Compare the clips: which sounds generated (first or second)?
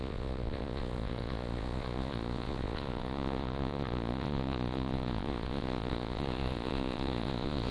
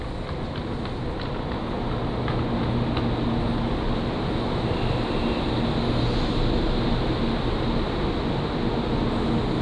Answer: first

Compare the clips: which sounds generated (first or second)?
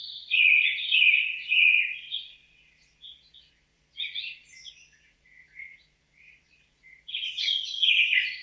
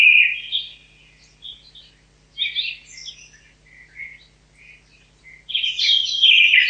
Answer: first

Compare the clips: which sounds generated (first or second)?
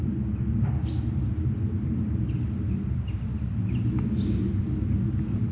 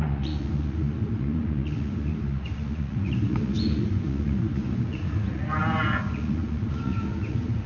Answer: second